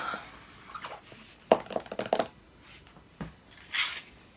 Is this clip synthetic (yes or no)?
no